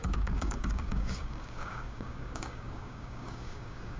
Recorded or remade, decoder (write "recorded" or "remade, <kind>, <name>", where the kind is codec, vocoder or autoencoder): remade, codec, DAC